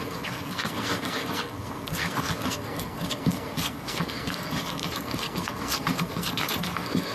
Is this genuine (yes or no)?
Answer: no